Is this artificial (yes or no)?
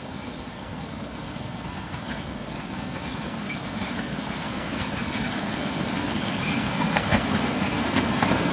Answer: yes